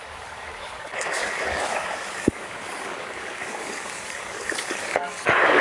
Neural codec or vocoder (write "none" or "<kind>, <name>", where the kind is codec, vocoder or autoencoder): codec, DAC